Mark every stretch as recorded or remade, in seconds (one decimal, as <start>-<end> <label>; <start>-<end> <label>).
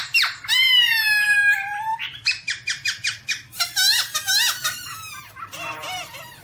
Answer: 0.0-3.1 remade; 3.1-4.7 recorded; 4.7-6.4 remade